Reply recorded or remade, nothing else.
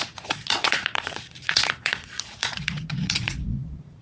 remade